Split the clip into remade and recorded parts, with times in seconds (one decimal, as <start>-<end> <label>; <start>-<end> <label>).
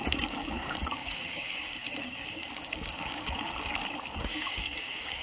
0.0-5.2 remade